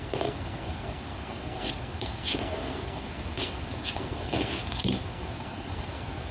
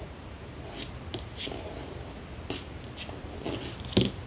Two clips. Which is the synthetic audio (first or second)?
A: first